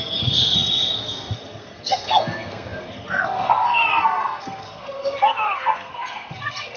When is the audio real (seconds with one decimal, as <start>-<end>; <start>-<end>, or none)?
none